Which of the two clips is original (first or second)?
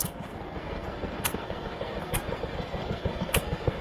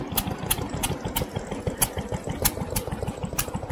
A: second